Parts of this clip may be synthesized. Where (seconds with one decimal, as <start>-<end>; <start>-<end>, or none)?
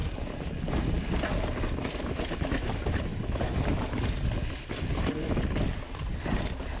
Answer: 0.0-0.9; 3.1-6.8